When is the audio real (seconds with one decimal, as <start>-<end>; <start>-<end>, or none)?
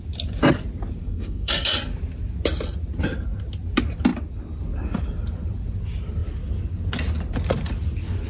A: 0.0-1.0; 1.5-8.3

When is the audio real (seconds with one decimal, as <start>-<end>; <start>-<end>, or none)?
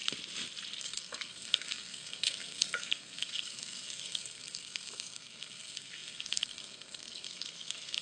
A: 0.0-0.8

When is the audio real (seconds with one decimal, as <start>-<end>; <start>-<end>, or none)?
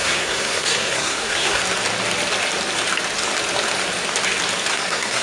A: 1.6-4.7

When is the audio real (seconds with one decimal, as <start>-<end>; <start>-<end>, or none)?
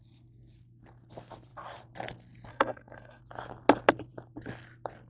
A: 0.0-2.5; 3.2-5.1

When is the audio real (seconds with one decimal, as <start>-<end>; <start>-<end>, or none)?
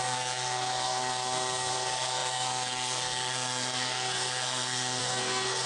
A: none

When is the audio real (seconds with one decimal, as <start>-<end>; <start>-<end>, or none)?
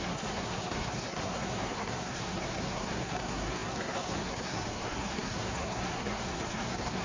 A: none